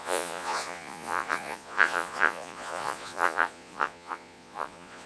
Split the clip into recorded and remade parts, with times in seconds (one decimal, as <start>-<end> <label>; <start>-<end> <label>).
0.0-5.1 remade